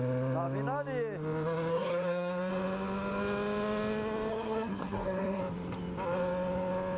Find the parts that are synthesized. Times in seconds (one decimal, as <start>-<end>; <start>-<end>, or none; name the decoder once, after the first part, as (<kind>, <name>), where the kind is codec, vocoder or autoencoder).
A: 1.7-2.5 (codec, SNAC); 4.3-5.4